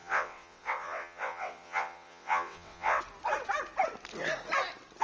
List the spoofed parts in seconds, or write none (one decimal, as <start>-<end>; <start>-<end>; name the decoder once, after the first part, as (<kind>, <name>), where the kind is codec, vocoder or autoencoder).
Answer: 0.0-3.0 (vocoder, WaveNeXt)